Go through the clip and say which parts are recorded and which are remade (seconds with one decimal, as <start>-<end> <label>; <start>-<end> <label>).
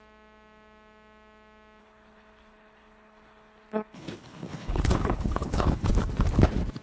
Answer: 0.0-1.8 recorded; 1.8-5.9 remade; 5.9-6.8 recorded